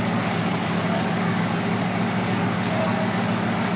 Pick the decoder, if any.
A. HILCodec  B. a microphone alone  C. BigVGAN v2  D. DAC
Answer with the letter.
D